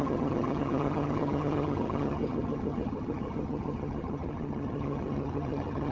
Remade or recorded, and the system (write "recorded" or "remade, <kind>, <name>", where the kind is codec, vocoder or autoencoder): remade, vocoder, HiFi-GAN